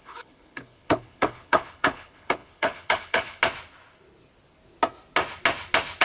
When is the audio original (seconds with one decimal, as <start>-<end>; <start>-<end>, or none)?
3.4-6.0